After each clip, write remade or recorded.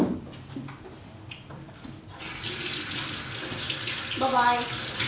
recorded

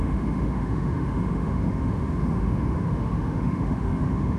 remade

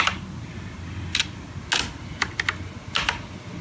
recorded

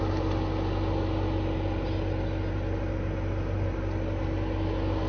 recorded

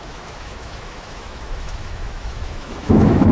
remade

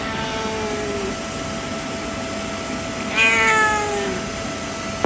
recorded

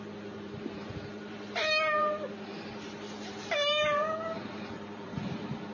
remade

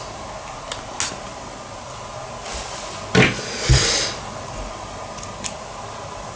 recorded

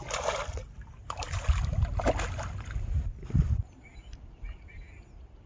recorded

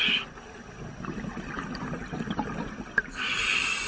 recorded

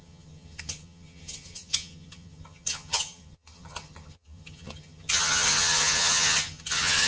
remade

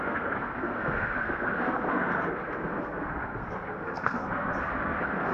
remade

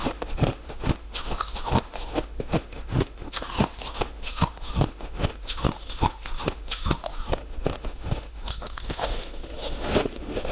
remade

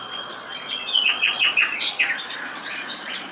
remade